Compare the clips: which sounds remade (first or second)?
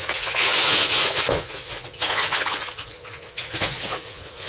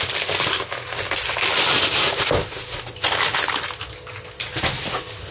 first